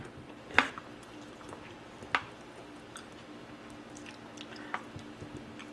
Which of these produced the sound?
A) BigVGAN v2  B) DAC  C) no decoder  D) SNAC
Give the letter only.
C